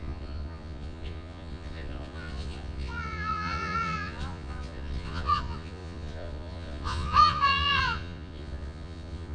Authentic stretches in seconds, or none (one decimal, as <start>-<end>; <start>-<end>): none